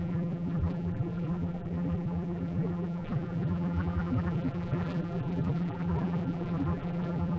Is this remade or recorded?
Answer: remade